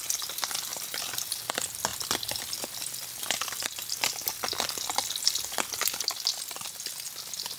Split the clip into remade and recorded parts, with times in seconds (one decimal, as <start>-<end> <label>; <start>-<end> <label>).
0.0-7.6 recorded